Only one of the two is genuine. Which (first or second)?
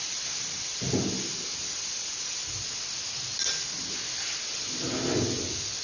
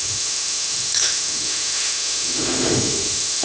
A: first